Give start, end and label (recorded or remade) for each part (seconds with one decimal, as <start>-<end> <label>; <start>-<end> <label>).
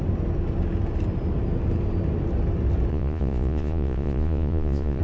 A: 0.0-2.9 recorded; 2.9-5.0 remade